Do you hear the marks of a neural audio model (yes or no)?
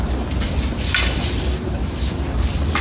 no